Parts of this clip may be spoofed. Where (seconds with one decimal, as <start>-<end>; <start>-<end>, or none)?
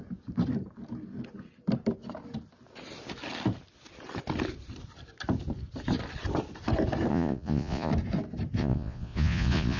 7.1-7.9; 8.6-9.8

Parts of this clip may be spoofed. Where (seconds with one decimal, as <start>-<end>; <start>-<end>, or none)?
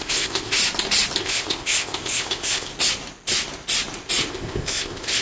0.0-0.6; 1.2-2.7; 4.3-5.2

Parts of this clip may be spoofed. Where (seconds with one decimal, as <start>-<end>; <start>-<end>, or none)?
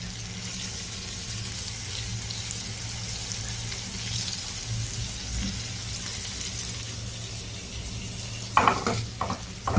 0.5-1.5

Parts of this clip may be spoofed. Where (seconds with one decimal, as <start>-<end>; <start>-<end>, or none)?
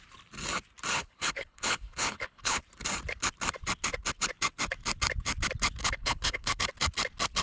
0.9-2.6; 5.8-6.6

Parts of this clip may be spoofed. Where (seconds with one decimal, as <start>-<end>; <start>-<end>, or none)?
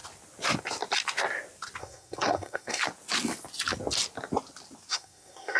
1.8-2.8; 4.9-5.6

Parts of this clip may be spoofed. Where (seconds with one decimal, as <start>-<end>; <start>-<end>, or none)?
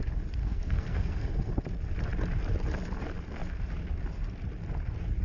0.4-1.5